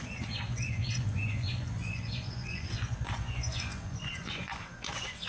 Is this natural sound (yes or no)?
no